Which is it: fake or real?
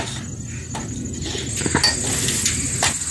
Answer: real